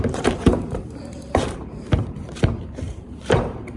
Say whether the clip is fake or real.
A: fake